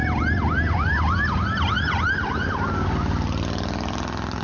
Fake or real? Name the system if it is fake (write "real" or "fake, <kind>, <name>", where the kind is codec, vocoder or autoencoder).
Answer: real